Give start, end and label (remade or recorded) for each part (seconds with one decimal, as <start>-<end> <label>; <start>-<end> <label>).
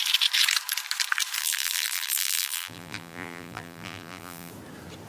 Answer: 0.0-1.4 recorded; 1.4-4.5 remade; 4.5-5.1 recorded